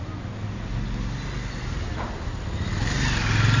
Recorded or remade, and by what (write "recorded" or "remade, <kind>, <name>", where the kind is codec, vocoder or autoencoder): recorded